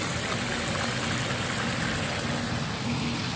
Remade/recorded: recorded